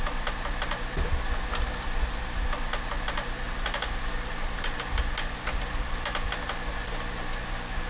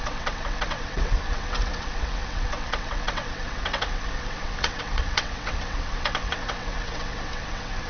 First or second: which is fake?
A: second